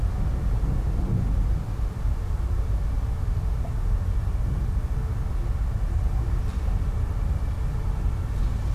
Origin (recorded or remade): recorded